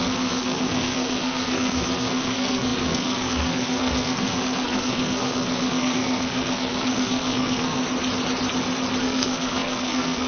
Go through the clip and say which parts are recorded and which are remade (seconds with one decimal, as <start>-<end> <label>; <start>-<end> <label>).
0.0-7.8 remade; 7.8-9.0 recorded; 9.0-10.3 remade